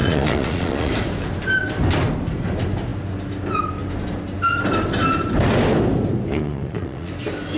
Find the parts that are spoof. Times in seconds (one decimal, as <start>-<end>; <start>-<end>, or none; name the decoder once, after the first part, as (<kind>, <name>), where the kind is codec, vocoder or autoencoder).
0.0-0.9 (vocoder, Vocos); 6.3-7.1